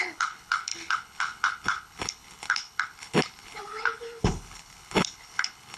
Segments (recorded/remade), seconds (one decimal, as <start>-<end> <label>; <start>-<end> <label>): 0.0-5.8 remade